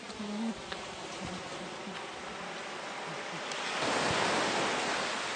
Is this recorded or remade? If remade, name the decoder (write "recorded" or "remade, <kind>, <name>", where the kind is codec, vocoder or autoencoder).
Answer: recorded